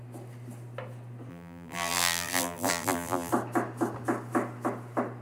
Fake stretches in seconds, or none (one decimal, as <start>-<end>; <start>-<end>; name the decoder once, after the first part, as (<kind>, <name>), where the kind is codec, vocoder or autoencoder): 1.3-3.3 (vocoder, BigVGAN v2)